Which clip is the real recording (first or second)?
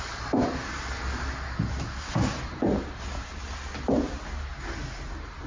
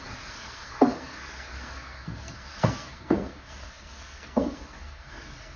first